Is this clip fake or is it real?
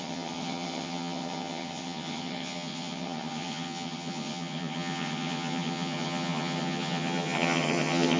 fake